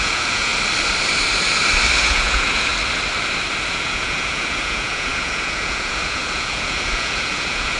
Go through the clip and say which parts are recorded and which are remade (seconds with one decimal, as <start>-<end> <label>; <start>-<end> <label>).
0.0-0.5 remade; 0.5-2.0 recorded; 2.0-2.7 remade; 2.7-3.7 recorded; 3.7-7.8 remade